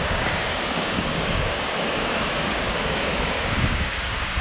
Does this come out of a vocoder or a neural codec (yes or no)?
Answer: yes